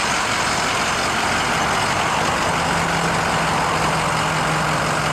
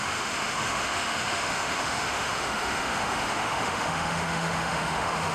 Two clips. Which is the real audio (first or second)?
first